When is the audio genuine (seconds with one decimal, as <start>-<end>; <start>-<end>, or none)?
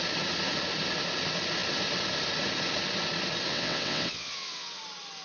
0.0-3.5; 4.8-5.2